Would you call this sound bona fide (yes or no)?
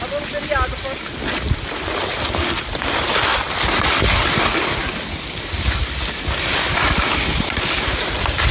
yes